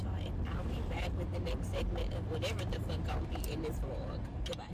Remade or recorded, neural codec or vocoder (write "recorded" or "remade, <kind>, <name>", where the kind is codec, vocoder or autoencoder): remade, vocoder, BigVGAN v2